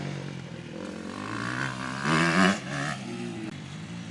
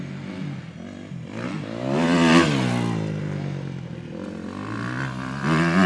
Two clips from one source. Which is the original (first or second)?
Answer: second